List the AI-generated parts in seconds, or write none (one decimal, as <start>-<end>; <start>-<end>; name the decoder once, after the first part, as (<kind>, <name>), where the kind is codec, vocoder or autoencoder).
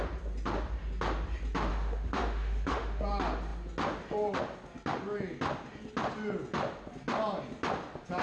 1.7-3.0 (autoencoder, DAC-VAE)